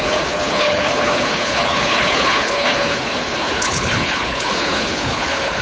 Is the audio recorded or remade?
remade